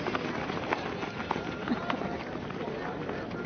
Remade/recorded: recorded